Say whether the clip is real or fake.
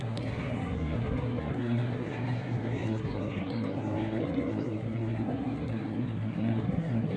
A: fake